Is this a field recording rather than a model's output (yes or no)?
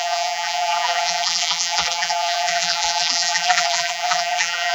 no